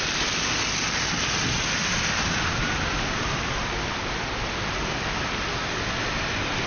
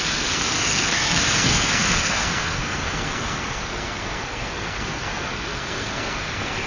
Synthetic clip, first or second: second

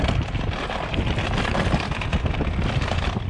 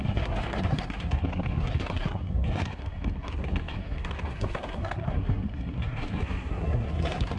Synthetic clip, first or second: second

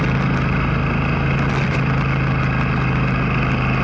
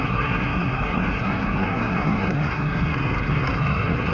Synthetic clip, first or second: second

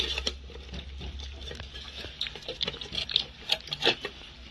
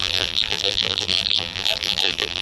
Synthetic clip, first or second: second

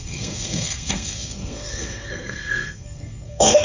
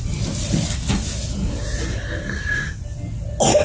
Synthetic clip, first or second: first